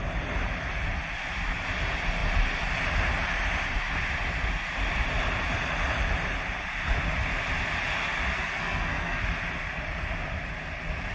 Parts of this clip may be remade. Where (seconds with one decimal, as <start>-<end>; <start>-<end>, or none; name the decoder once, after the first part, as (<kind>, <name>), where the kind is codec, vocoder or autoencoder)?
8.3-9.2 (codec, SNAC)